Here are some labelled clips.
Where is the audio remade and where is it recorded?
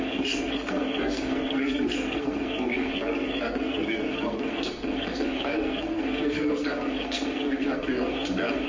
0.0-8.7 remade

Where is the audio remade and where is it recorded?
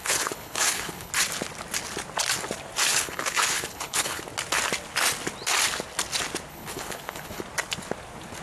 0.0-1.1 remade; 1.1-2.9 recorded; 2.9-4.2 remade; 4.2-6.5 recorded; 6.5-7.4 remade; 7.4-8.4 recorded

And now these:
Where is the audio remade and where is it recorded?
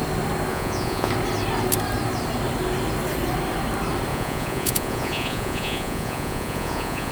0.0-0.5 recorded; 0.5-1.1 remade; 1.1-4.1 recorded; 4.1-7.1 remade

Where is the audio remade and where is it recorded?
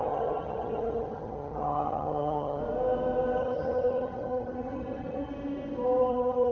0.0-2.6 remade; 2.6-3.4 recorded; 3.4-5.3 remade; 5.3-6.1 recorded; 6.1-6.5 remade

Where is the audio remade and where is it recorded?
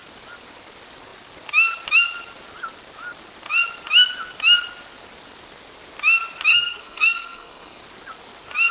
0.0-6.5 recorded; 6.5-7.8 remade; 7.8-8.7 recorded